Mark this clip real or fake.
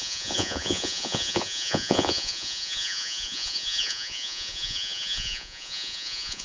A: fake